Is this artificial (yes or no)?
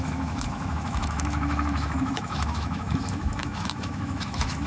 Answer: yes